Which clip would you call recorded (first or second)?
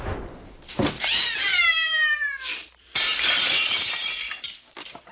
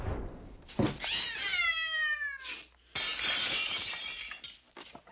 second